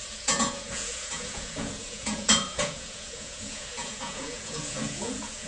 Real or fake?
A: fake